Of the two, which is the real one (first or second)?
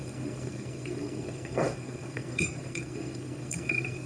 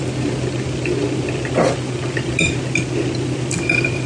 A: second